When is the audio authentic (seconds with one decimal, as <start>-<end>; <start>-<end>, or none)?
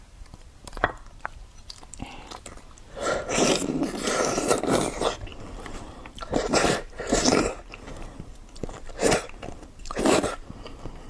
1.4-2.5